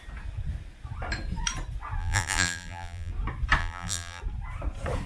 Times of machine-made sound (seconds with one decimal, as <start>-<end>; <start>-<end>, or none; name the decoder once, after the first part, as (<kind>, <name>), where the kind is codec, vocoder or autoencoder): 2.0-3.1 (vocoder, BigVGAN v2); 3.6-4.2